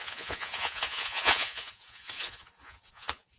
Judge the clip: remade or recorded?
remade